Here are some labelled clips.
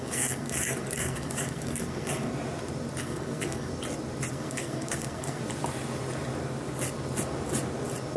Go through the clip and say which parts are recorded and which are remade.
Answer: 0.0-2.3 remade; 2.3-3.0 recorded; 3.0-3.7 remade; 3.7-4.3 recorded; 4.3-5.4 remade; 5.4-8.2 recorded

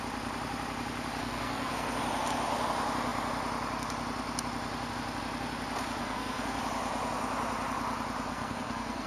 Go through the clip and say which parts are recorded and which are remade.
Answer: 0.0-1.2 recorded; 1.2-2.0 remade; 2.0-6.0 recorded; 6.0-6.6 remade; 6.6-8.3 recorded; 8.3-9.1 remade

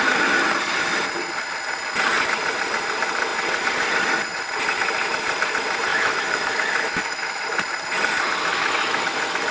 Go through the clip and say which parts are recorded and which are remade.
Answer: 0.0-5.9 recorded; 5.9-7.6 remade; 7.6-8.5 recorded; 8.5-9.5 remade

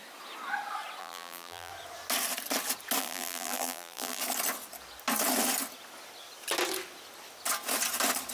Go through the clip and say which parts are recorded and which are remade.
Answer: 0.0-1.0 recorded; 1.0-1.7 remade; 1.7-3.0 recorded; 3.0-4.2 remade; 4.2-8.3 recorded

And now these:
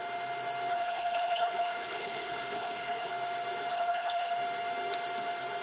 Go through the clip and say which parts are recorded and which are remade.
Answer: 0.0-0.7 recorded; 0.7-3.1 remade; 3.1-3.7 recorded; 3.7-4.3 remade; 4.3-5.6 recorded